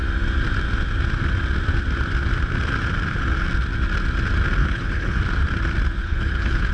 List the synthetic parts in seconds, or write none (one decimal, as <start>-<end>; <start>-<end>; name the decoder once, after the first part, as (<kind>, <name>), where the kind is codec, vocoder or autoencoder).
4.6-5.2 (codec, HILCodec); 6.0-6.7